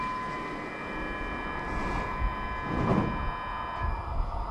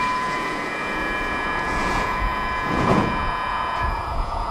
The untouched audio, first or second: first